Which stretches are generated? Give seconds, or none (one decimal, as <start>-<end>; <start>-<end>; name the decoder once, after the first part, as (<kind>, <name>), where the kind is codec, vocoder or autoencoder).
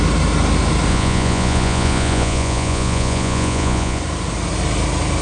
0.9-4.0 (vocoder, Vocos)